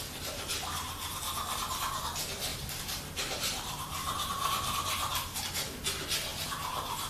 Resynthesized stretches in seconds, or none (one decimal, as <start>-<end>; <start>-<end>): 2.5-5.1; 6.3-7.1